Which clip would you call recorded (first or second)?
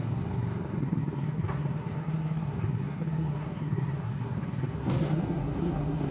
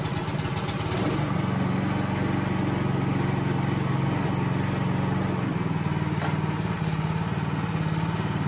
second